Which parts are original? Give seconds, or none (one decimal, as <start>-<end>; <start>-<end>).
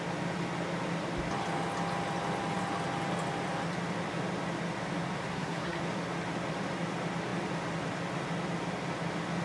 0.0-5.3; 5.8-9.4